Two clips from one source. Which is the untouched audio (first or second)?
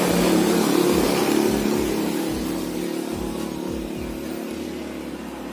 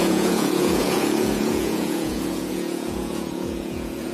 first